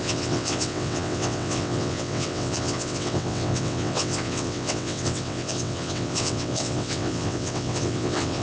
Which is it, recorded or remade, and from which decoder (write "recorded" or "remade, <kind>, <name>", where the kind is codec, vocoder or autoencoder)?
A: remade, vocoder, WaveNeXt